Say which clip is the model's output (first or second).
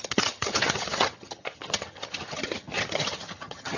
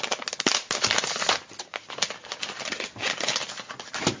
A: first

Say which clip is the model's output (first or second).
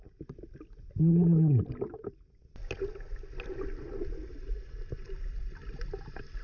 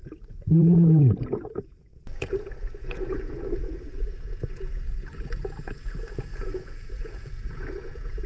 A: second